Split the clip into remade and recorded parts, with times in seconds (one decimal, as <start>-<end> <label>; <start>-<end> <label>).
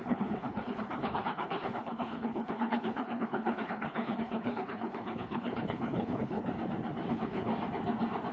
0.0-6.4 remade; 6.4-7.1 recorded; 7.1-7.5 remade; 7.5-8.3 recorded